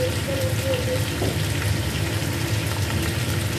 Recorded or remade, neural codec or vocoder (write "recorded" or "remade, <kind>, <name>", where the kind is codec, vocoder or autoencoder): recorded